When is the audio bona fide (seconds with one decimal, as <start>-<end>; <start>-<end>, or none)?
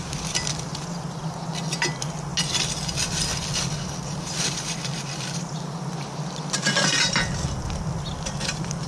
0.0-8.9